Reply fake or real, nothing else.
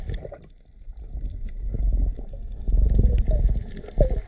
real